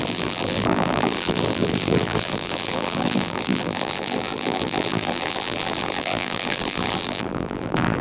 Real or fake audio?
fake